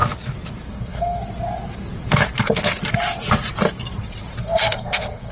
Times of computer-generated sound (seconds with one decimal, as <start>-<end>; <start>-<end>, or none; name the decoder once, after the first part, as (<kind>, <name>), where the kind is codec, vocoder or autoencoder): 0.7-1.2 (codec, SNAC); 4.4-5.3